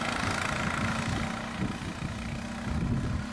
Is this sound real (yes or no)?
yes